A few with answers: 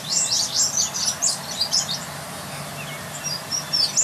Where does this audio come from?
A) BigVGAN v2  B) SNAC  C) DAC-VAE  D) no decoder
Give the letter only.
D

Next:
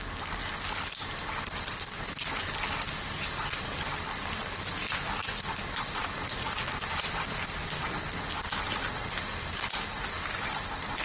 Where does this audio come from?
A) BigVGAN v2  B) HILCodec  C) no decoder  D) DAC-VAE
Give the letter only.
C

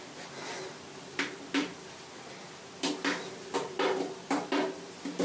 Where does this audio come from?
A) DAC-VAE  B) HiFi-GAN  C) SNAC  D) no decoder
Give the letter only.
D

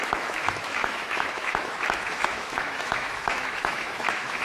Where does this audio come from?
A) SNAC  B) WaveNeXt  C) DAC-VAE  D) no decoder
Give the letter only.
C